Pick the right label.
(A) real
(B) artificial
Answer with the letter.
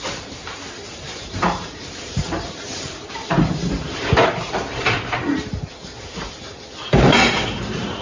B